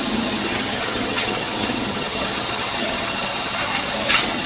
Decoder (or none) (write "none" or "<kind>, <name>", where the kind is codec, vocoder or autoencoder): vocoder, HiFi-GAN